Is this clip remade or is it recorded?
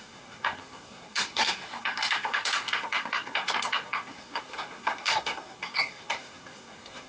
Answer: remade